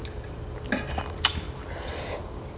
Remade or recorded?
recorded